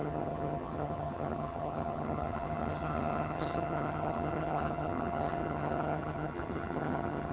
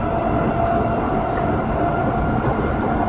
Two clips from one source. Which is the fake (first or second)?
first